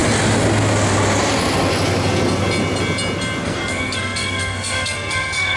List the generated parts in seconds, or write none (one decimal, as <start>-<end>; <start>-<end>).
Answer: 3.4-5.6